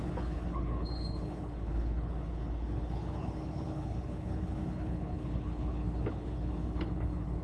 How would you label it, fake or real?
fake